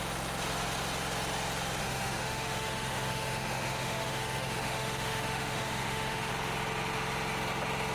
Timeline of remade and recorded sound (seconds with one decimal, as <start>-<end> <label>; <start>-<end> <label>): 0.0-1.8 recorded; 1.8-6.3 remade; 6.3-7.9 recorded